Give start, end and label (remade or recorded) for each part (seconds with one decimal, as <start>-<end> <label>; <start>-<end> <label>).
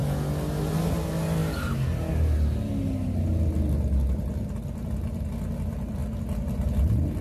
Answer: 0.0-7.2 recorded